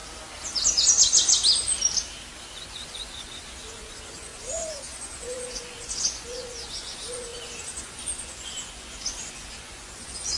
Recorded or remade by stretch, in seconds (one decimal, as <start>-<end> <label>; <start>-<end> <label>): 0.0-2.4 recorded; 2.4-10.4 remade